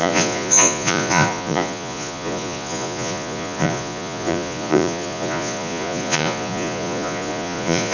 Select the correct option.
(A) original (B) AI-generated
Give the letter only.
B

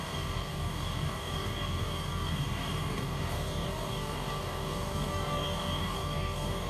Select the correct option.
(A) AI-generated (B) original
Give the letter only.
A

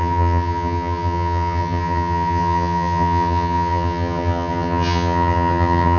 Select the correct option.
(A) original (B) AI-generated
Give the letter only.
B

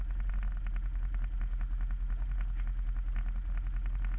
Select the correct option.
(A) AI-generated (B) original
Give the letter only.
B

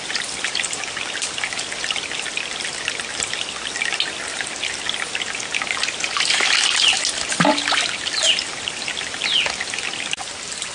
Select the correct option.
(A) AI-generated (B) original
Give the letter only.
B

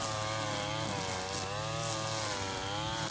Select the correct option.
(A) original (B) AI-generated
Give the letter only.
A